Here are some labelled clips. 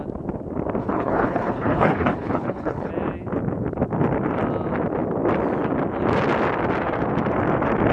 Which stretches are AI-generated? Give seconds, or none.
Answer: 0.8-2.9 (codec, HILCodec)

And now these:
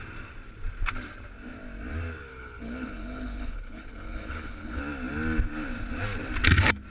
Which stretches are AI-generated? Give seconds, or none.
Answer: 2.3-4.8 (codec, HILCodec)

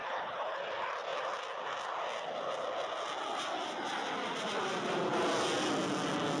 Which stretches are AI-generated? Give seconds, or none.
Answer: 0.0-0.6 (codec, HILCodec)

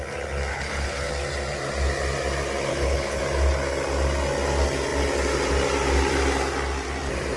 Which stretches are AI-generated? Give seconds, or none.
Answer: 0.5-1.1 (codec, HILCodec); 2.7-3.2

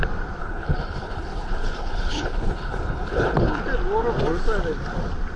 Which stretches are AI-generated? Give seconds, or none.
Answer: 0.4-3.6 (codec, HILCodec)

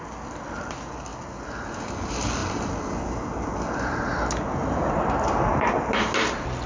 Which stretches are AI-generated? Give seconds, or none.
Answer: none

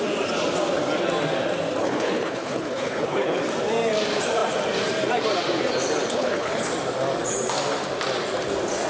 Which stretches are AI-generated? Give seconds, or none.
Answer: 1.8-3.4 (codec, HILCodec); 6.1-6.7